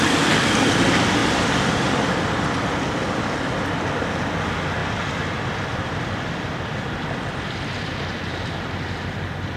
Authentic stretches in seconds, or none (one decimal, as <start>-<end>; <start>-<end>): 0.0-1.2; 2.5-4.8; 8.3-9.6